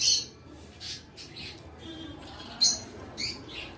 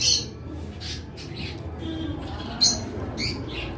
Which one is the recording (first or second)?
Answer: second